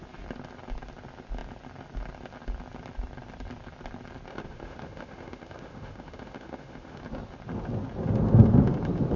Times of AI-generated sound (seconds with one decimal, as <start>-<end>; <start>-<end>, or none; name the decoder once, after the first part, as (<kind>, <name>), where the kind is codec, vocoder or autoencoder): 4.3-7.0 (autoencoder, DAC-VAE)